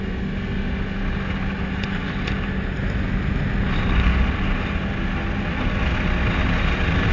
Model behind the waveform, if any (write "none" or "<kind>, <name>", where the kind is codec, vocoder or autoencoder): none